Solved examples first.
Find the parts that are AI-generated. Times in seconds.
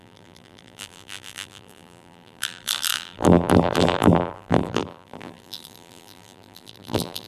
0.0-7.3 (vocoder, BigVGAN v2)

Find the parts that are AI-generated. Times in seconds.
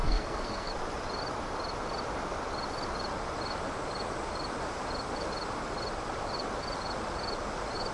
0.0-0.7 (codec, SNAC)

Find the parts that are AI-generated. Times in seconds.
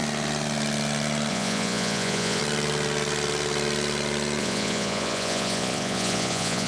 1.3-2.4 (vocoder, Vocos); 4.4-6.7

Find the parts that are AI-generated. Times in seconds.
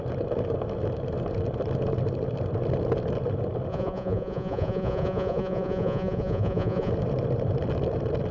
3.7-6.9 (vocoder, Vocos)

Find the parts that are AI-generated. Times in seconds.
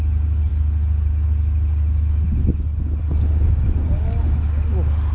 none